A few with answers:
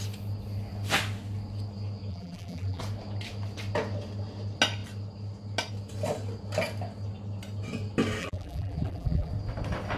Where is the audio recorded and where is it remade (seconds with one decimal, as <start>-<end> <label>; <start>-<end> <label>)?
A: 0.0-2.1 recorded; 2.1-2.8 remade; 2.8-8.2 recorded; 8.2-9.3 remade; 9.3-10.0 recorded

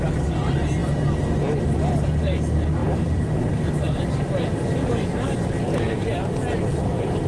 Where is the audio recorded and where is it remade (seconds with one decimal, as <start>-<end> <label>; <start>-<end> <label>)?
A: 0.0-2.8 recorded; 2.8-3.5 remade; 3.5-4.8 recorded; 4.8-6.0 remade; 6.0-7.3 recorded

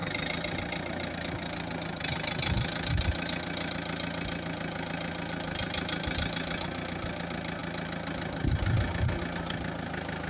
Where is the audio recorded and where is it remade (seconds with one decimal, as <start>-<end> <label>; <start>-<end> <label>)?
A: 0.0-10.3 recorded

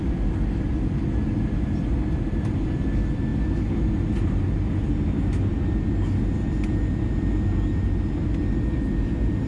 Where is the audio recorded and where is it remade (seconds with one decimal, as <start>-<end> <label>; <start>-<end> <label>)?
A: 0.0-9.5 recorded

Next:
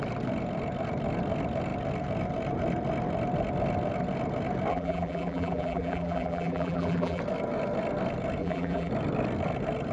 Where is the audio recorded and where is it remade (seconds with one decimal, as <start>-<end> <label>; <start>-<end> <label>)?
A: 0.0-4.7 recorded; 4.7-7.2 remade; 7.2-8.4 recorded; 8.4-8.9 remade; 8.9-9.9 recorded

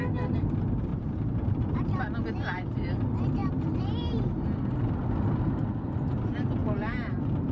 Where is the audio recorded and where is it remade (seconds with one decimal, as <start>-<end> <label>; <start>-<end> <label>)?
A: 0.0-0.9 recorded; 0.9-1.7 remade; 1.7-6.6 recorded; 6.6-7.5 remade

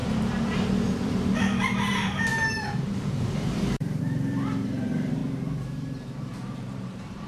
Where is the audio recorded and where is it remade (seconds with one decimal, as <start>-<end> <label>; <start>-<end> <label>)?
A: 0.0-5.2 remade; 5.2-6.2 recorded; 6.2-7.3 remade